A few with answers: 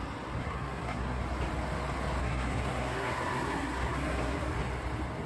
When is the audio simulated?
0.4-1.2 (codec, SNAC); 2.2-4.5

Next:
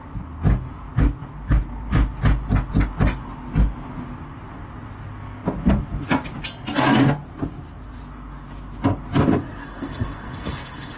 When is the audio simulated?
9.6-11.0 (codec, SNAC)